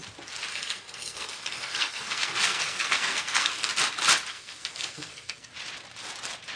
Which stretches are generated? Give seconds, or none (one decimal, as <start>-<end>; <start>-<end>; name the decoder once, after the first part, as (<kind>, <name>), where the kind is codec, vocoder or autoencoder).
0.5-3.7 (codec, SNAC); 4.3-5.5